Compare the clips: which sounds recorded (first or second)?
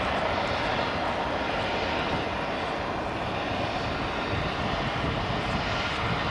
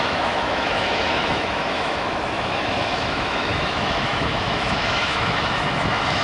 first